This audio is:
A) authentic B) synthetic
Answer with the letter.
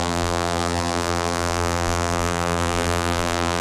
B